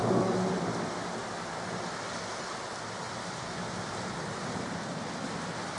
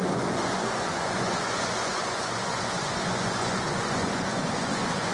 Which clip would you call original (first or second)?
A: first